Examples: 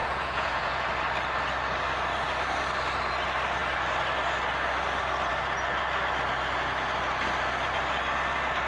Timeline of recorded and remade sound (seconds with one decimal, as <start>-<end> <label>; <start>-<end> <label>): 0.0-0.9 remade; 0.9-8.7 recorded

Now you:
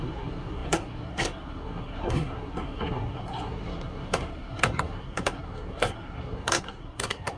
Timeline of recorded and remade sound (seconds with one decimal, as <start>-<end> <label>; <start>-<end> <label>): 0.0-7.4 remade

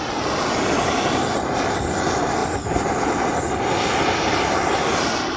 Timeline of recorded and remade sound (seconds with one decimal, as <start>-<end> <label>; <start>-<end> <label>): 0.0-2.4 recorded; 2.4-3.0 remade; 3.0-5.4 recorded

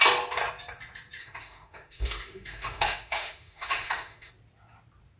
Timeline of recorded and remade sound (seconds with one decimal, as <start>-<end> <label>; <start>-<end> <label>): 0.0-1.2 recorded; 1.2-4.3 remade; 4.3-5.2 recorded

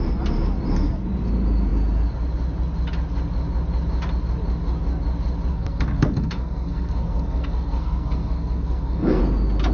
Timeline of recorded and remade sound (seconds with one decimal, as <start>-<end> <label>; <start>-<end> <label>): 0.0-5.5 recorded; 5.5-9.2 remade; 9.2-9.7 recorded

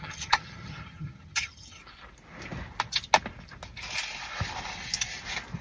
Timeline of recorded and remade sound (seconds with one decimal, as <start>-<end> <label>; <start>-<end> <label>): 0.0-1.8 remade; 1.8-5.6 recorded

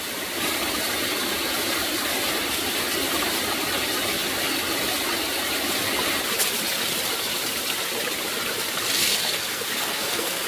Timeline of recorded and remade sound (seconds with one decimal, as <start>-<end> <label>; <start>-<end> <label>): 0.0-9.0 recorded; 9.0-10.5 remade

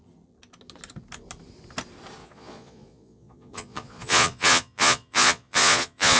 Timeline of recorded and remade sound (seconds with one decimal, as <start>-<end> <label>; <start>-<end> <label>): 0.0-2.2 recorded; 2.2-6.2 remade